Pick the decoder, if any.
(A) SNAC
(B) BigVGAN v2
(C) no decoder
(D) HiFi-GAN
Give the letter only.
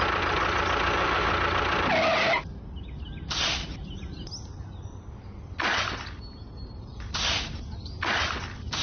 C